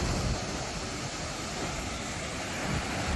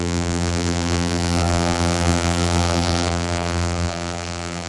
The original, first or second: first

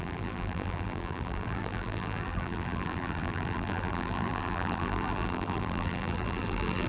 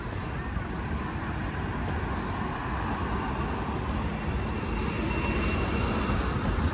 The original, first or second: second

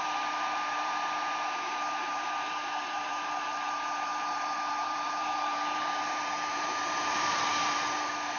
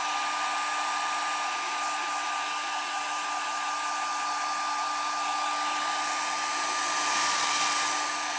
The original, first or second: second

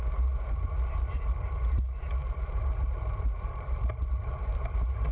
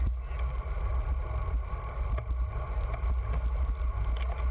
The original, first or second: second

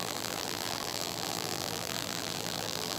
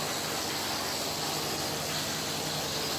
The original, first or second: second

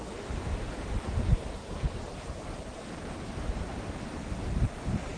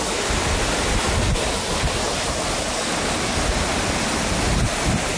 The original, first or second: second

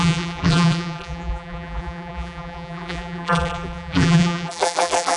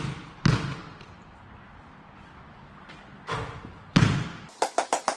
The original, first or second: second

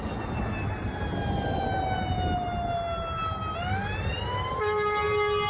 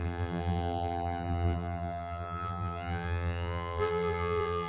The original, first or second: first